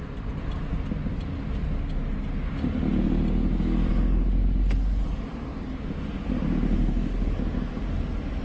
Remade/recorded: recorded